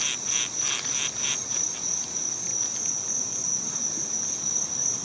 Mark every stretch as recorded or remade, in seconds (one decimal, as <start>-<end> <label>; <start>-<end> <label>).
0.0-5.0 recorded